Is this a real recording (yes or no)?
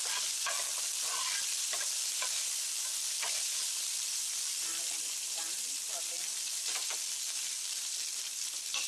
no